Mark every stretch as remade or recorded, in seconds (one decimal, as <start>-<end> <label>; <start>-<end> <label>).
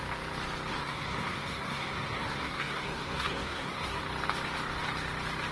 0.0-0.7 recorded; 0.7-4.0 remade; 4.0-5.5 recorded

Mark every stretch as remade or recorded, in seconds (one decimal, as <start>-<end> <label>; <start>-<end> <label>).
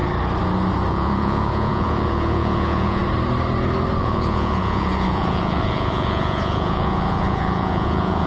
0.0-0.9 recorded; 0.9-3.0 remade; 3.0-4.0 recorded; 4.0-8.3 remade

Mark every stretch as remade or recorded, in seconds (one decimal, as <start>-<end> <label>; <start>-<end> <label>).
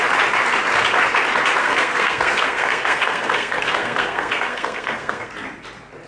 0.0-1.6 recorded; 1.6-5.3 remade; 5.3-6.1 recorded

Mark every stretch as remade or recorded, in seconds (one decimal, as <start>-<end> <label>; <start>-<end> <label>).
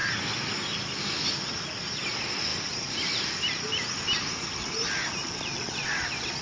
0.0-5.2 recorded; 5.2-5.9 remade; 5.9-6.4 recorded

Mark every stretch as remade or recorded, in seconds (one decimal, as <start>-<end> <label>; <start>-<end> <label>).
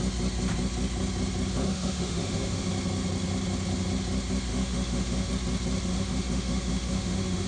0.0-1.5 recorded; 1.5-2.6 remade; 2.6-4.5 recorded; 4.5-5.3 remade; 5.3-5.9 recorded; 5.9-7.5 remade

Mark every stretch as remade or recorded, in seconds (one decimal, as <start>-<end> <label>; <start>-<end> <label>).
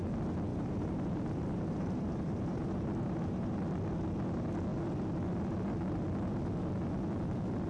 0.0-0.5 recorded; 0.5-3.5 remade; 3.5-7.7 recorded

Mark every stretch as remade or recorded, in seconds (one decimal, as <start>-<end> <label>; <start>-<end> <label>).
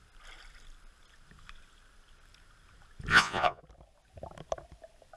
0.0-3.1 recorded; 3.1-3.6 remade; 3.6-5.2 recorded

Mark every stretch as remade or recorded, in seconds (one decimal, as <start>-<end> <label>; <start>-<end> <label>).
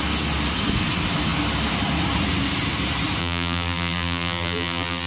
0.0-3.2 recorded; 3.2-5.1 remade